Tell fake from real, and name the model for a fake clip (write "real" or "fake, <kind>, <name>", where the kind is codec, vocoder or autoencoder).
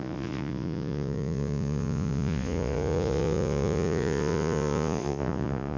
fake, vocoder, Vocos